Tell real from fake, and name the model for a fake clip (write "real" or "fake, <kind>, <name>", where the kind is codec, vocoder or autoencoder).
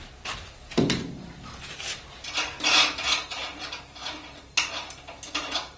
real